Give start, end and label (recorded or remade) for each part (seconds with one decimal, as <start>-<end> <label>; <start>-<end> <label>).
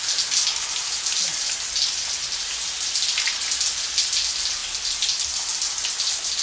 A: 0.0-6.4 recorded